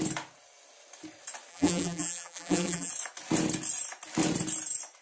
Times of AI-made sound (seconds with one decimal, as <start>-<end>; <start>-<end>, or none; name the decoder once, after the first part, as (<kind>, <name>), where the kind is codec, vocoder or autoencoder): 1.5-2.9 (vocoder, BigVGAN v2)